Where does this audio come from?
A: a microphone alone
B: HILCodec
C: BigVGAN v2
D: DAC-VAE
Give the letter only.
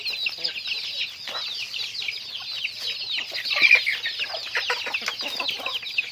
A